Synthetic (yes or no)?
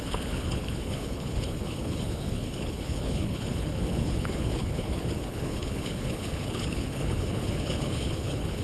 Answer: yes